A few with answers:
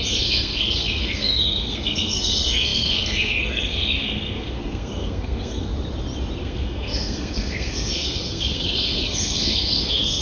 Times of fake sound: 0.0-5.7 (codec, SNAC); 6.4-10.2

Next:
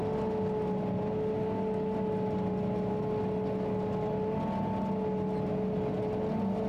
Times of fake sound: none

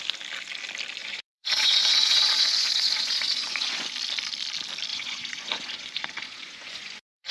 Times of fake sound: 1.0-3.9 (vocoder, Vocos); 4.9-7.3